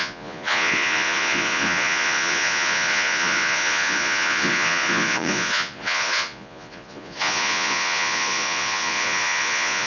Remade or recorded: remade